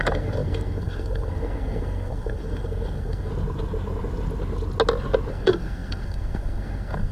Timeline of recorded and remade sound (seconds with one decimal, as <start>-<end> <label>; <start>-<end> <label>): 0.0-3.3 remade; 3.3-5.3 recorded; 5.3-7.1 remade